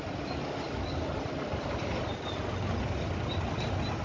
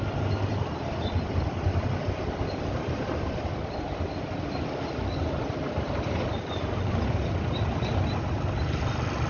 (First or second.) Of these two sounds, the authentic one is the first